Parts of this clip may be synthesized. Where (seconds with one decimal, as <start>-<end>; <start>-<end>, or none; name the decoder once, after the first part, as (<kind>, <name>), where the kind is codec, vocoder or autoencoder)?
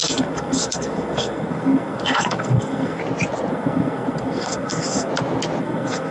0.0-3.0 (codec, SNAC); 3.5-5.1; 5.6-6.1